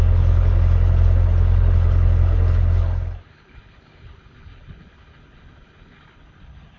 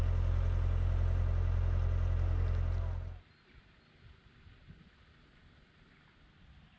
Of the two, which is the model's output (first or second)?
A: first